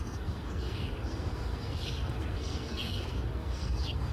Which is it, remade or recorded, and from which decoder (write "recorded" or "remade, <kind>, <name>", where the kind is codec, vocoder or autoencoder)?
remade, codec, SNAC